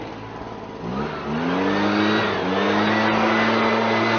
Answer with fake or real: real